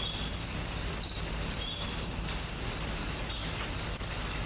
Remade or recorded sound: recorded